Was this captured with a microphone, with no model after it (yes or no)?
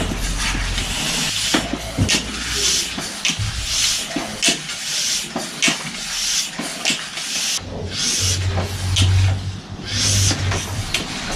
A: yes